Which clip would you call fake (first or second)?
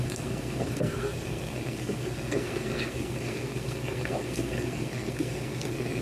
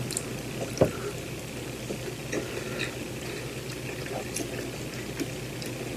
first